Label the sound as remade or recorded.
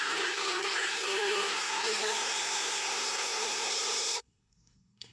remade